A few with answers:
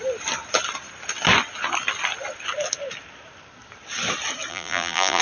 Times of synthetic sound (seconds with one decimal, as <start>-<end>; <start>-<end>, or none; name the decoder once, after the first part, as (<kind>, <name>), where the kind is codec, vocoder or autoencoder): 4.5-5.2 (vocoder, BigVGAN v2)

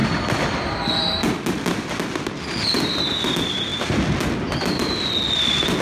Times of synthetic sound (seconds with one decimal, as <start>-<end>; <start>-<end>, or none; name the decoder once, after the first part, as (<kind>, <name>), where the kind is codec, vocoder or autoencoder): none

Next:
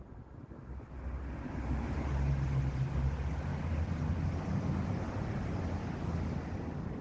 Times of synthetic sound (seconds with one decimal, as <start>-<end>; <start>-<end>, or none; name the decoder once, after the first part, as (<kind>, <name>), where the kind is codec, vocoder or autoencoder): none

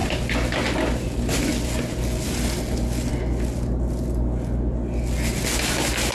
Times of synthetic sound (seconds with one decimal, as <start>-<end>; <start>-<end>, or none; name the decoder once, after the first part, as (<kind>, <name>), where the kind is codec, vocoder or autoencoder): none

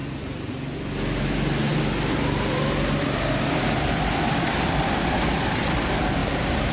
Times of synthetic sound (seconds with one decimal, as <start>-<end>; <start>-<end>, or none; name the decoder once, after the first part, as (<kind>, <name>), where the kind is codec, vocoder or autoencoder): 0.0-0.5 (vocoder, BigVGAN v2)

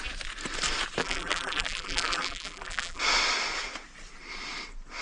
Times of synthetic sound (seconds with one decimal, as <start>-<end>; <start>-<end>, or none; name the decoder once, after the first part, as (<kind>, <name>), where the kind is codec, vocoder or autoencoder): 1.0-3.0 (vocoder, BigVGAN v2)